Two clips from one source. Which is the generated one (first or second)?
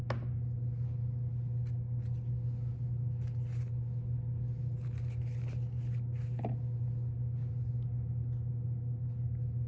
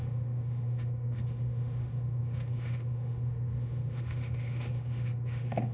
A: second